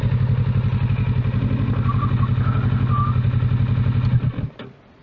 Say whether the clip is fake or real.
real